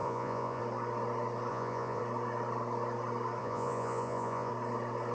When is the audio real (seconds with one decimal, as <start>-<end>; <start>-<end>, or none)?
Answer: 0.6-1.5; 2.0-3.4; 4.5-5.1